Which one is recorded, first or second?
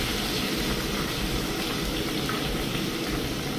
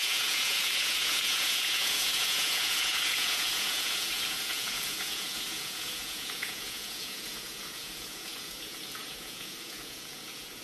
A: first